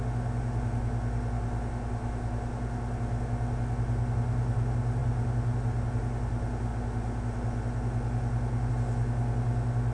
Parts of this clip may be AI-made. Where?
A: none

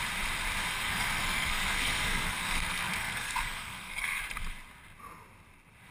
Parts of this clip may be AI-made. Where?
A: 0.7-4.2 (codec, SNAC)

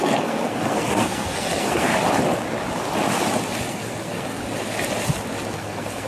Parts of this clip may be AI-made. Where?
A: 0.0-1.9 (codec, SNAC); 3.7-4.4; 5.5-6.1

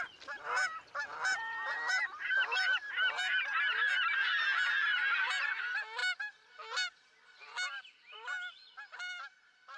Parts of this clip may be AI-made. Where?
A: 1.3-3.4 (vocoder, BigVGAN v2)